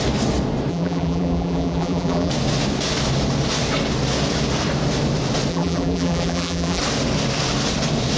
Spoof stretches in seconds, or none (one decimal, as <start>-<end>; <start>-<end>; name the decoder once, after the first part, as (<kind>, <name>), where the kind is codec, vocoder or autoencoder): 0.7-2.3 (vocoder, BigVGAN v2); 5.5-6.8